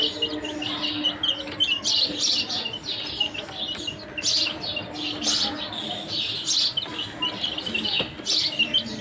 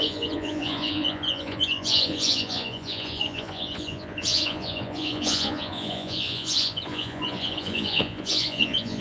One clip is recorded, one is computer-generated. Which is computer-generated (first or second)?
second